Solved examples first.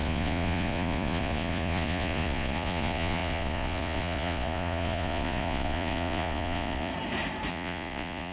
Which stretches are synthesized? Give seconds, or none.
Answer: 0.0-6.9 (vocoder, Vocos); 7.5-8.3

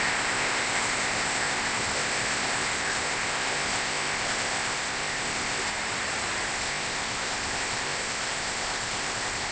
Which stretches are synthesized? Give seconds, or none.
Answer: 0.0-5.7 (codec, ZipCodec); 6.5-9.5

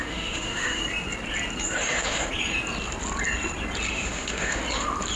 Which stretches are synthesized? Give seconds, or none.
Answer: 0.0-0.8 (autoencoder, DAC-VAE); 3.9-4.6

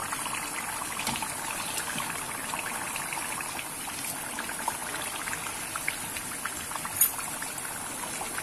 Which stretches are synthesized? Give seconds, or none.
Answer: none

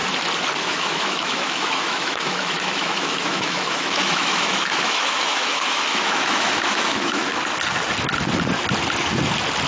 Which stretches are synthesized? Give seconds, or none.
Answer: 0.6-7.3 (autoencoder, DAC-VAE)